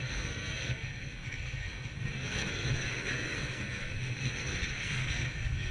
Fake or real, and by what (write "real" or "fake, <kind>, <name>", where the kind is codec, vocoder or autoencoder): fake, codec, SNAC